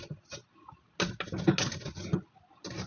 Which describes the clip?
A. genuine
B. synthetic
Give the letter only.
A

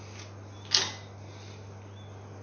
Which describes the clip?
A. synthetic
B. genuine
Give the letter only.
B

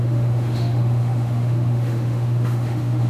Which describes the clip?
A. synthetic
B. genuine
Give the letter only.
A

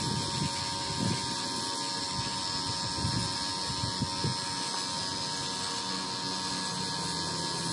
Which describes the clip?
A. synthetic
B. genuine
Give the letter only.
B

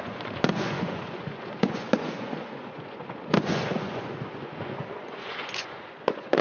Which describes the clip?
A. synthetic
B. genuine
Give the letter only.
A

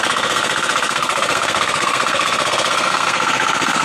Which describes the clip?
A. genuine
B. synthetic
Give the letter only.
B